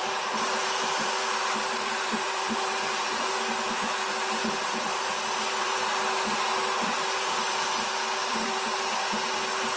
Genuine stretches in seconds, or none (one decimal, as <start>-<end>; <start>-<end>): 3.5-4.4; 5.8-8.2; 9.2-9.8